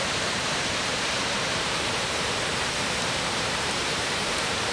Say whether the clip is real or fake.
fake